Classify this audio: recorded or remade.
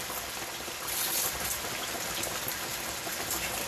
recorded